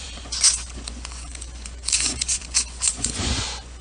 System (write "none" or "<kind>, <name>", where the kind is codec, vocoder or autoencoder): vocoder, Vocos